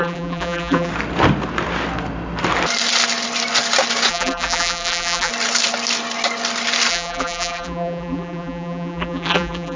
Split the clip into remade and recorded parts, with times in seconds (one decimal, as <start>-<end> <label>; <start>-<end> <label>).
0.0-0.9 remade; 0.9-4.1 recorded; 4.1-5.3 remade; 5.3-6.9 recorded; 6.9-9.8 remade